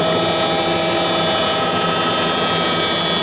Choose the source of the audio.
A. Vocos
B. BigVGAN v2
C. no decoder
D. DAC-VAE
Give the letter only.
C